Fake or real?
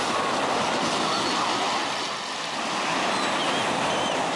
real